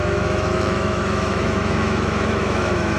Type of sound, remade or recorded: remade